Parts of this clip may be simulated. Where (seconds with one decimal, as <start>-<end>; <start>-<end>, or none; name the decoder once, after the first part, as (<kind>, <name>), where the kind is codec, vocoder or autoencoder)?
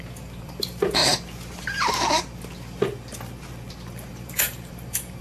0.0-1.0 (vocoder, BigVGAN v2); 4.1-5.2